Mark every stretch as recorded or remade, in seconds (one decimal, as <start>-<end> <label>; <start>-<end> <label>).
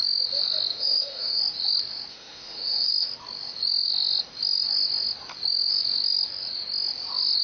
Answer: 0.0-0.7 recorded; 0.7-1.4 remade; 1.4-2.1 recorded; 2.1-2.9 remade; 2.9-7.4 recorded